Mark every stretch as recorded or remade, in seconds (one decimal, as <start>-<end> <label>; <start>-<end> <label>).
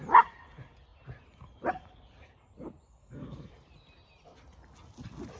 0.0-3.0 recorded; 3.0-3.5 remade; 3.5-5.4 recorded